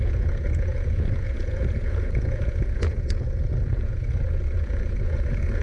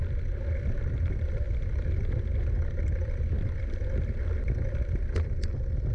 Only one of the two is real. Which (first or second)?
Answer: second